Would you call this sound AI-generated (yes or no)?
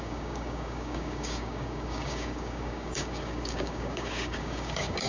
yes